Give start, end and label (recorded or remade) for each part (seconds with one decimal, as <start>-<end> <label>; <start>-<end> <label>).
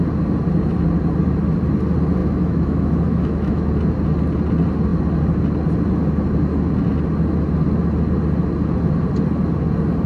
0.0-2.2 recorded; 2.2-3.7 remade; 3.7-10.1 recorded